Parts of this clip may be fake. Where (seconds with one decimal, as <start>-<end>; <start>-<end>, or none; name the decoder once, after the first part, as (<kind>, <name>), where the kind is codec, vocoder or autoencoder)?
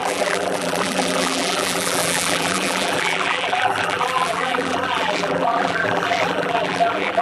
0.0-7.2 (vocoder, BigVGAN v2)